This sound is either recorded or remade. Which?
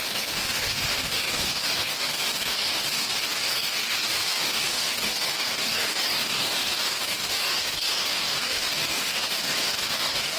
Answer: remade